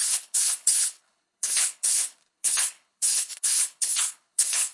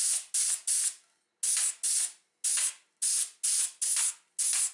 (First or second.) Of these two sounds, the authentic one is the second